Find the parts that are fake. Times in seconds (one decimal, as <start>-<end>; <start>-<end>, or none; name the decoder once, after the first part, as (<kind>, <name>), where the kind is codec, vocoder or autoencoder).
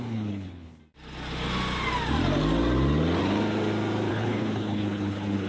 0.0-0.8 (codec, HILCodec); 4.1-5.5